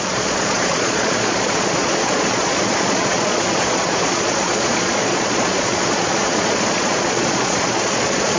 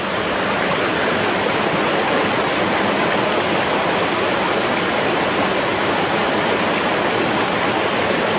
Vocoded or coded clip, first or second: first